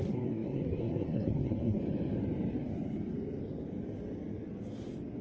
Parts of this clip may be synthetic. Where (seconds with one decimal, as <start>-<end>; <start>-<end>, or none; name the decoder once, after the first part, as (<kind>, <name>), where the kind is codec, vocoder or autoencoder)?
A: 0.0-1.8 (codec, SNAC)

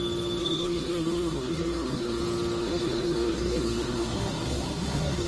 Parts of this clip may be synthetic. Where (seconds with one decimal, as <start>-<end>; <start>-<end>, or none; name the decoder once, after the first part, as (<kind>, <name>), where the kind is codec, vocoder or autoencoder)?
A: 0.4-2.2 (codec, SNAC); 2.6-5.3

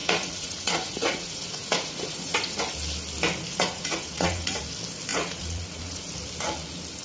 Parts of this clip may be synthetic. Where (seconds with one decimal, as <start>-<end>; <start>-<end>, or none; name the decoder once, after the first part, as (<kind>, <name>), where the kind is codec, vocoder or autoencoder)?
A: 0.0-2.6 (vocoder, Vocos); 3.5-4.6; 5.1-6.1

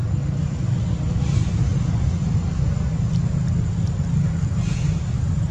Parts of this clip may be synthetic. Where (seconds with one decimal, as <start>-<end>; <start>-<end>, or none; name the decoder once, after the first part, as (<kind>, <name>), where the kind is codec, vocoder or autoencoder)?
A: none

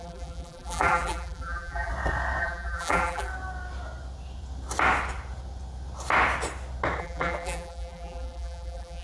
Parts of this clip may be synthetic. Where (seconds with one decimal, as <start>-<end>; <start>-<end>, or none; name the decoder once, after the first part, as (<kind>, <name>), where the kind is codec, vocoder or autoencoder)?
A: 0.0-1.9 (vocoder, BigVGAN v2); 2.4-3.3; 7.0-9.0

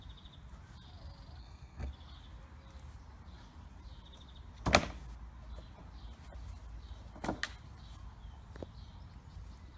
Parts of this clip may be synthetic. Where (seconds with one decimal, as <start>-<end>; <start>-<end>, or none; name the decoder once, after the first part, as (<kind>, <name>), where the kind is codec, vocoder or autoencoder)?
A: 1.4-1.9 (codec, SNAC)